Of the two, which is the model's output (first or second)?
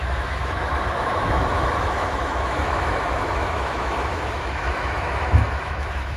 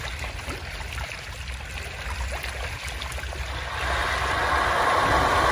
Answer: first